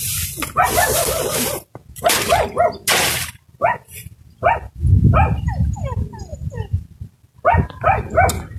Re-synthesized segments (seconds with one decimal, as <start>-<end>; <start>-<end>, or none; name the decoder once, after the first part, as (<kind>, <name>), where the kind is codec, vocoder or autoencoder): none